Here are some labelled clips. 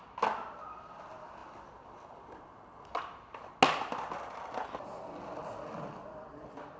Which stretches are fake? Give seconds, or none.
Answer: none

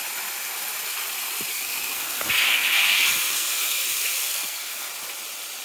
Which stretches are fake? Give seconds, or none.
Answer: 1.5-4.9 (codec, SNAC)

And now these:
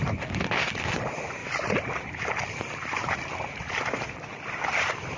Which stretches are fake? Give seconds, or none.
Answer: none

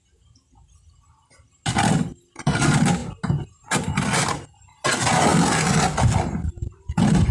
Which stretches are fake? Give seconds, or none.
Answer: none

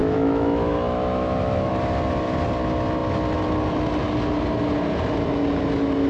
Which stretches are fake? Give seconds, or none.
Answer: 0.0-1.7 (autoencoder, DAC-VAE)

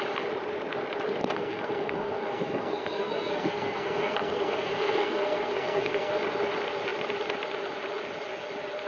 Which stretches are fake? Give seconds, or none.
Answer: 1.2-6.1 (codec, SNAC)